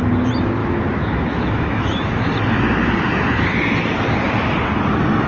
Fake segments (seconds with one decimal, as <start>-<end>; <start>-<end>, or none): 0.6-2.3